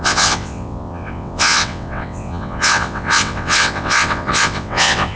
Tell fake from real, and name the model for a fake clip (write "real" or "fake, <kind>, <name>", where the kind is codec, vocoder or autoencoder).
fake, vocoder, WaveNeXt